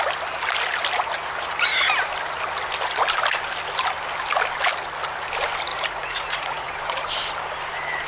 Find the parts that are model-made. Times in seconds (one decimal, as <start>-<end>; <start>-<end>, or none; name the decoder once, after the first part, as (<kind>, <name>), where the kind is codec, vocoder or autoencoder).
5.7-6.7 (vocoder, Vocos)